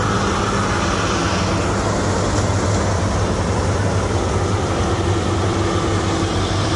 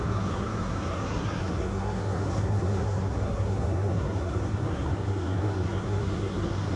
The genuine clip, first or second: first